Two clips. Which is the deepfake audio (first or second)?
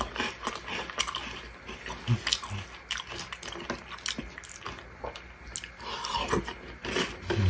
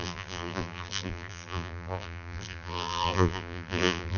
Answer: second